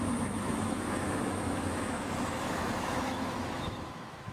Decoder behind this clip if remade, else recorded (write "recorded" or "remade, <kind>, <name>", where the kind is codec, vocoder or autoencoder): remade, autoencoder, DAC-VAE